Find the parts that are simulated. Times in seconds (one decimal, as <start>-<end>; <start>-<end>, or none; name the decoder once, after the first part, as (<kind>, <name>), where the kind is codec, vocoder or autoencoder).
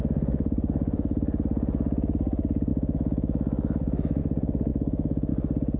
2.7-4.2 (autoencoder, DAC-VAE); 4.7-5.3